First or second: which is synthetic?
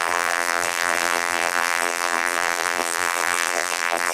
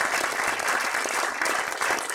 first